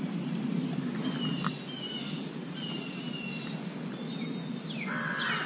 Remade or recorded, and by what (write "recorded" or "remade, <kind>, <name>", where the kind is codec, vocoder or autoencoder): recorded